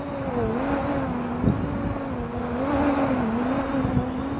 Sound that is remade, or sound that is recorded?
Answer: recorded